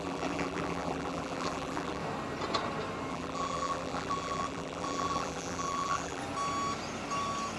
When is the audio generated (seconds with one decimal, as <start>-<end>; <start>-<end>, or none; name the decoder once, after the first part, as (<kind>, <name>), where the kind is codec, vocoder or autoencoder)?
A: 0.0-2.0 (vocoder, BigVGAN v2); 3.1-6.2